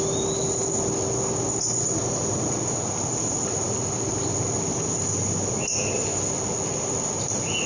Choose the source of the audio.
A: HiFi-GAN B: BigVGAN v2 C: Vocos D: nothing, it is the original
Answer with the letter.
D